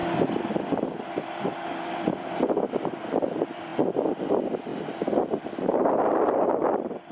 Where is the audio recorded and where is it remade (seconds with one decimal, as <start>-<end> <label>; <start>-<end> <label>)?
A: 0.0-2.5 remade; 2.5-5.7 recorded; 5.7-7.1 remade